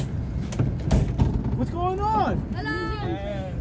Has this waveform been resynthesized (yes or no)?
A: no